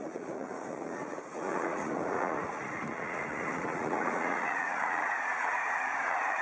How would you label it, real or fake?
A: fake